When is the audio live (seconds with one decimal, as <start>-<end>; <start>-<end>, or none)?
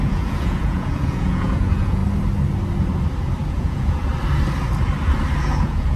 2.0-3.5; 4.1-5.4